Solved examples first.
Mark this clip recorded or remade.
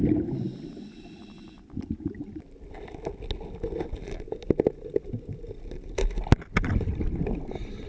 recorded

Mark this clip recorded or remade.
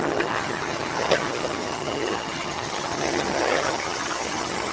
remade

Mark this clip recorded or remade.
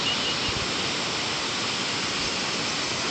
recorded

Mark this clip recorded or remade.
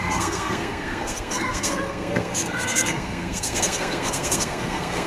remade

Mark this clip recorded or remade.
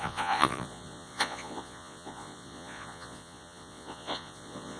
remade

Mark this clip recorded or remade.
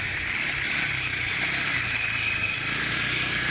remade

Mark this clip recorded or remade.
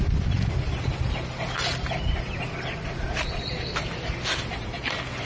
recorded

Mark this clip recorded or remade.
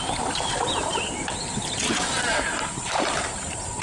remade